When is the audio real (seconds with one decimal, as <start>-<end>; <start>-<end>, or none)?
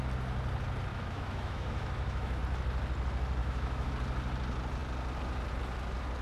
0.0-0.9; 2.4-3.4; 3.9-6.2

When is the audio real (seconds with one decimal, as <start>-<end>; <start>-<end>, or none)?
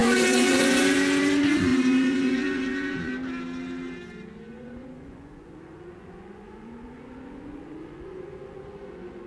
3.1-4.5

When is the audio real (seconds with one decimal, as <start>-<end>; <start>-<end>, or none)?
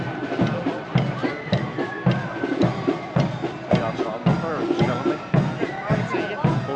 0.0-6.8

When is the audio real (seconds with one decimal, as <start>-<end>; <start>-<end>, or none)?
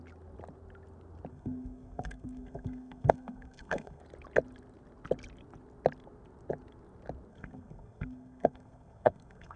0.0-1.3; 4.0-7.3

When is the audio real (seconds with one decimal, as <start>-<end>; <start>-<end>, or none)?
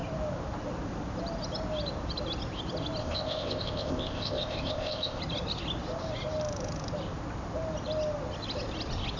0.0-3.0; 5.2-9.2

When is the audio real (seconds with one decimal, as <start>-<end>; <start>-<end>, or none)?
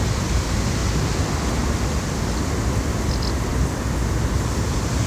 0.0-5.1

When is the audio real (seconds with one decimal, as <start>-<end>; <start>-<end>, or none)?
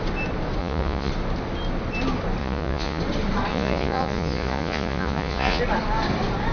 0.0-0.6; 1.1-2.4; 3.0-3.5; 5.6-6.5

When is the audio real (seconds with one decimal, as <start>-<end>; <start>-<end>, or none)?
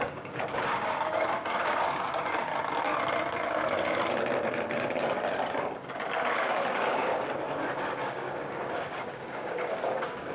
2.5-6.3; 7.1-8.0